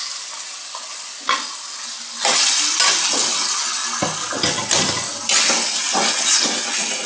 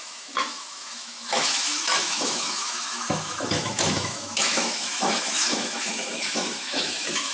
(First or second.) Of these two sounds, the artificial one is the second